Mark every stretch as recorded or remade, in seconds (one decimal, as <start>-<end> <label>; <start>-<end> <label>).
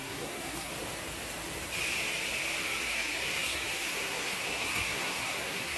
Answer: 0.0-0.7 remade; 0.7-2.9 recorded; 2.9-5.8 remade